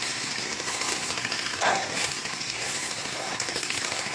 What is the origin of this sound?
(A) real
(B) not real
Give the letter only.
B